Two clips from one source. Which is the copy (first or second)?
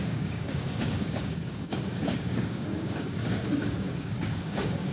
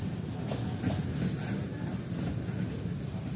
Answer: first